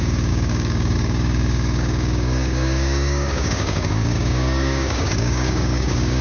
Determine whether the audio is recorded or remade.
remade